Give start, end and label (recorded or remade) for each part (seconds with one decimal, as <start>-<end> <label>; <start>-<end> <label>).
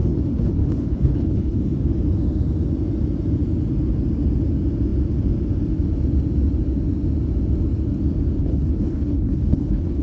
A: 0.0-1.6 remade; 1.6-8.4 recorded; 8.4-10.0 remade